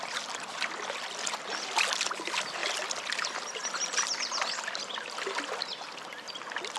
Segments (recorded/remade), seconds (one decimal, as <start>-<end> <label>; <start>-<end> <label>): 0.0-6.8 recorded